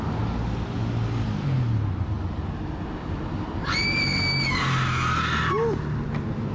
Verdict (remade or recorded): recorded